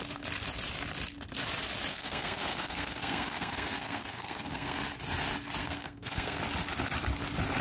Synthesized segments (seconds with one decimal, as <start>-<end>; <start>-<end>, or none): 1.9-4.8; 5.6-6.4